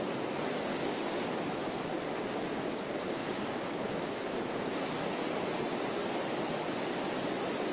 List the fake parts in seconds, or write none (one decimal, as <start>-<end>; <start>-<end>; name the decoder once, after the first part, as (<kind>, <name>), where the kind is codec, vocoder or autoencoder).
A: 0.7-1.2 (codec, DAC); 3.2-4.0